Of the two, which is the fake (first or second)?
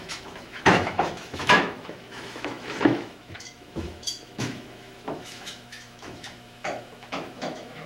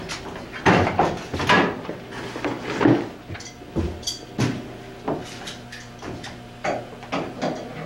first